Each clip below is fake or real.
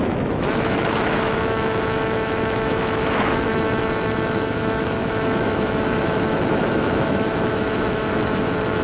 fake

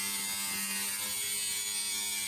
real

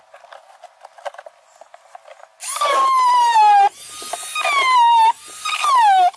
real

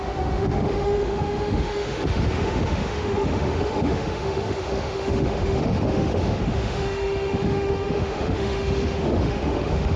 fake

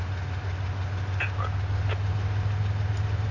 real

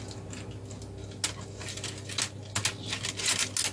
real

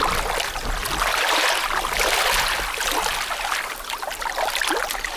real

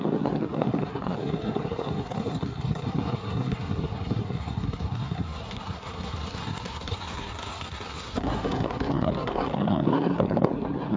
fake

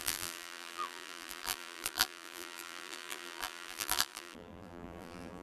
fake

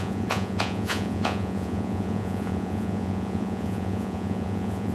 fake